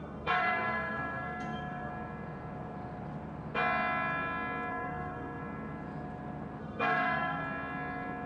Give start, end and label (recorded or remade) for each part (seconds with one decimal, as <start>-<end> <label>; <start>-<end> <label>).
0.0-1.9 remade; 1.9-4.7 recorded; 4.7-5.4 remade; 5.4-6.6 recorded; 6.6-7.4 remade; 7.4-8.3 recorded